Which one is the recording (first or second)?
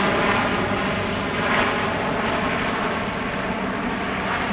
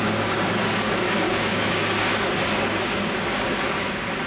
first